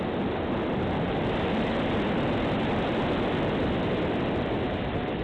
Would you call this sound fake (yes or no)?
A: no